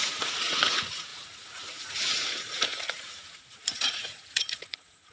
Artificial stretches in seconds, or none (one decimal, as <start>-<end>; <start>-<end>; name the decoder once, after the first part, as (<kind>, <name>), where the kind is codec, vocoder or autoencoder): 0.0-5.1 (vocoder, Vocos)